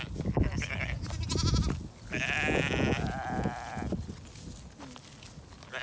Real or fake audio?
real